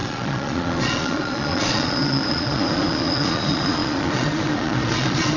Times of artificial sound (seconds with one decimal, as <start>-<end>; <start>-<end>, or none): 0.0-5.4